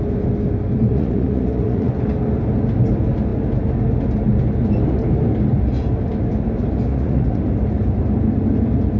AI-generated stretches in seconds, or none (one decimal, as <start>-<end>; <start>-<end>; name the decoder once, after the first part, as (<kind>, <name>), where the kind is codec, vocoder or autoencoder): 0.9-1.9 (vocoder, Vocos); 6.9-7.4